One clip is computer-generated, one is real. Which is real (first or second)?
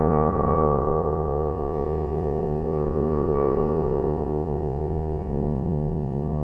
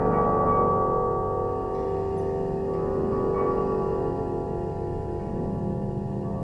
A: second